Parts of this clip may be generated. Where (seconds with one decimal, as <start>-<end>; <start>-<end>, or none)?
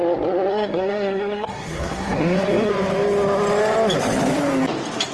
0.5-2.7